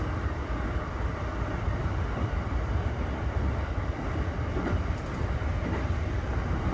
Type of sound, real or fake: fake